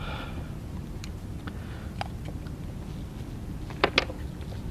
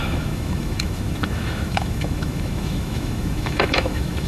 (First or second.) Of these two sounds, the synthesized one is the second